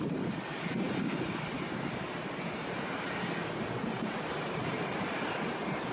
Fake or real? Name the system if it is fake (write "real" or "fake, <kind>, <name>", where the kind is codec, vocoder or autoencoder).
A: real